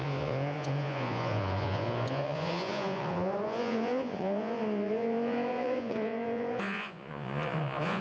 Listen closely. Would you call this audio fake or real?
fake